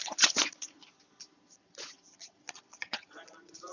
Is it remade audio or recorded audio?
remade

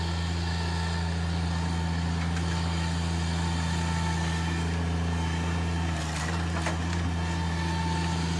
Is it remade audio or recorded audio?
recorded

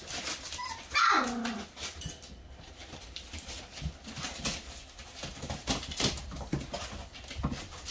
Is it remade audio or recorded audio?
recorded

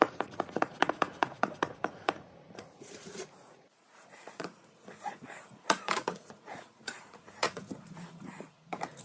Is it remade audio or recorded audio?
remade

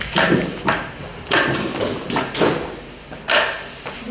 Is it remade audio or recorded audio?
recorded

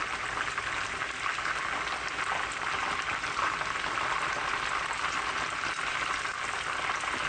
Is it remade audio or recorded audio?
recorded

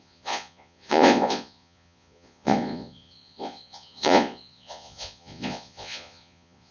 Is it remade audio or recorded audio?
remade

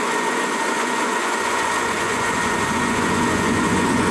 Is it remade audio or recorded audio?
remade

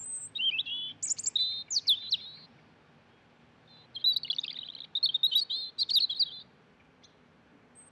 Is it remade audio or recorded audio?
recorded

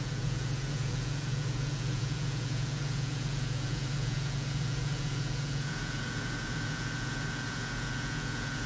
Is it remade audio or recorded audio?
remade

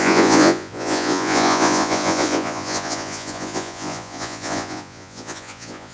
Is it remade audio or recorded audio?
remade